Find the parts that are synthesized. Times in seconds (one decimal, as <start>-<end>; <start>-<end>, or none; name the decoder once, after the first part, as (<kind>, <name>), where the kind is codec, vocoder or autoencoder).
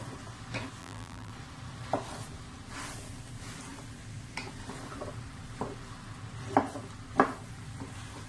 0.8-1.3 (vocoder, BigVGAN v2)